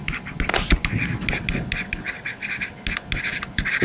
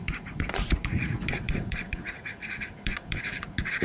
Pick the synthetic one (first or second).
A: second